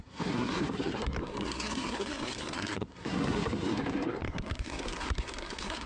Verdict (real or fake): fake